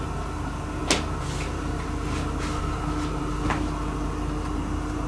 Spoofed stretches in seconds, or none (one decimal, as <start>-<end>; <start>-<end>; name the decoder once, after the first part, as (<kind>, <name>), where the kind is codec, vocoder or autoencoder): none